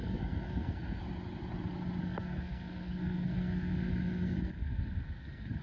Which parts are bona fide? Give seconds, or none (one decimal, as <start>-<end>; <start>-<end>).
1.0-2.0